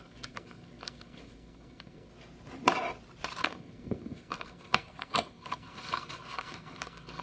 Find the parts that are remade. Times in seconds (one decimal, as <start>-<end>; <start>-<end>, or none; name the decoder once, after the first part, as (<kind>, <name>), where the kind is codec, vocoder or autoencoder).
0.0-2.1 (codec, SNAC); 3.4-7.2